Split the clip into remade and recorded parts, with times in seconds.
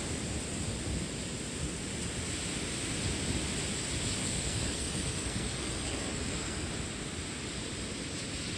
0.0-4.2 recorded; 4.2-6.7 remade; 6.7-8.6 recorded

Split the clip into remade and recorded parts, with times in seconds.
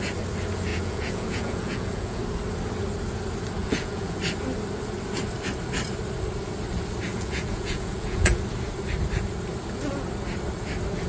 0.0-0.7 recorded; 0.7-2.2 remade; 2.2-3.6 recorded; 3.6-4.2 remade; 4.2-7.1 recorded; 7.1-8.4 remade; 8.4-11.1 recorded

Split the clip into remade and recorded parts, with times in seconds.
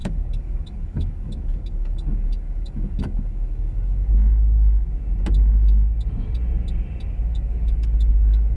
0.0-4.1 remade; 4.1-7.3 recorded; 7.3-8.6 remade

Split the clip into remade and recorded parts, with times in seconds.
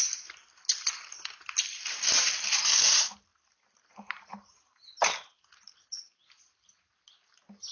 0.0-0.4 remade; 0.4-1.1 recorded; 1.1-1.7 remade; 1.7-2.7 recorded; 2.7-3.3 remade; 3.3-7.7 recorded